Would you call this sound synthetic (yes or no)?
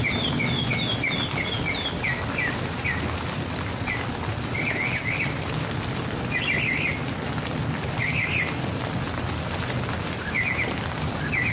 no